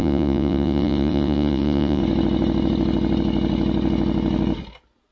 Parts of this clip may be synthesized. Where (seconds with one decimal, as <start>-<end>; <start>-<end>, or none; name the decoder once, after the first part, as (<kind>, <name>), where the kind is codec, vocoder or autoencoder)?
0.0-2.0 (vocoder, Vocos)